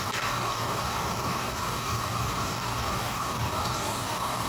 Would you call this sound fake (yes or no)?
yes